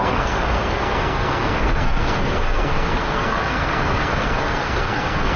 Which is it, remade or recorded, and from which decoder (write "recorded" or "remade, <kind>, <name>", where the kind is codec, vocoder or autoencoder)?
remade, codec, SNAC